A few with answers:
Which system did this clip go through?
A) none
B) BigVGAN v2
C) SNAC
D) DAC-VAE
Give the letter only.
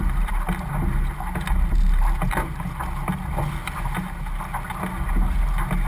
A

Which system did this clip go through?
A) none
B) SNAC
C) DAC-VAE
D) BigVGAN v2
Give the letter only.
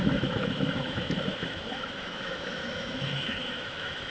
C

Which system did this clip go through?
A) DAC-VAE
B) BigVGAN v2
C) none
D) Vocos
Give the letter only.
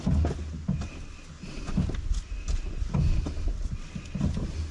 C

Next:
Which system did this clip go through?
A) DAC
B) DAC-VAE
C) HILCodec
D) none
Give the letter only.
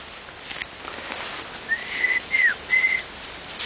D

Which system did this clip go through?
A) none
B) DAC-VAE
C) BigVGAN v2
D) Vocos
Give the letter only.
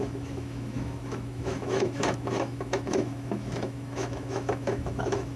B